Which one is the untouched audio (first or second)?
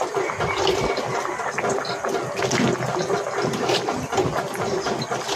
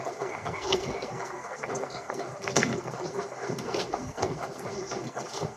first